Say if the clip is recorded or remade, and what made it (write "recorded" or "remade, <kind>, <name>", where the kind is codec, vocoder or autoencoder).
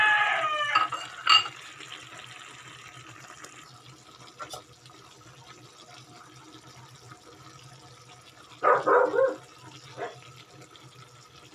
recorded